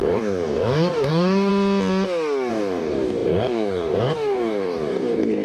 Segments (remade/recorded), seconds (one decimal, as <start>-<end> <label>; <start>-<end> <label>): 0.0-1.5 remade; 1.5-2.5 recorded; 2.5-5.4 remade